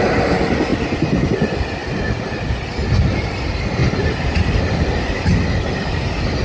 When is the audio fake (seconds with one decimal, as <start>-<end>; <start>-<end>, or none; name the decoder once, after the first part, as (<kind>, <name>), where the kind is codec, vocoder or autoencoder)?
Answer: 0.7-1.3 (vocoder, BigVGAN v2); 3.8-4.9